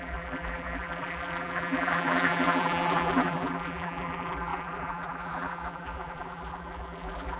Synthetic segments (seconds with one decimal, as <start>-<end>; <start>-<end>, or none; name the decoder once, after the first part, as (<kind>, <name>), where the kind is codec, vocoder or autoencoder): 0.0-7.4 (vocoder, BigVGAN v2)